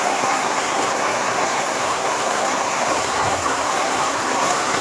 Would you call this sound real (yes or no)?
no